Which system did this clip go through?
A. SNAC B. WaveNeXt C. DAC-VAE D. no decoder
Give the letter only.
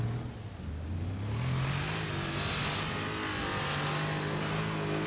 D